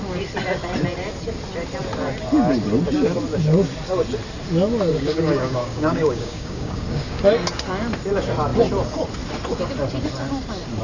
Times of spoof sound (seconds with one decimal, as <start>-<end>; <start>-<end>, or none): 4.9-7.2